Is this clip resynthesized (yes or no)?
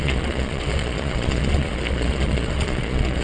yes